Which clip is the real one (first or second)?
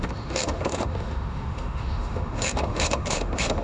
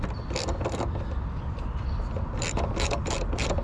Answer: second